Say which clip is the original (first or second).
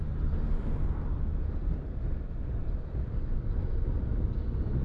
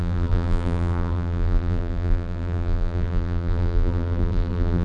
first